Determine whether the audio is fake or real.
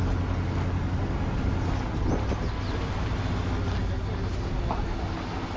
real